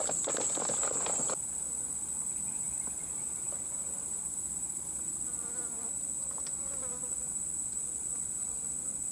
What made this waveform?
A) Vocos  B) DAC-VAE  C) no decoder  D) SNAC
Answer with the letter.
C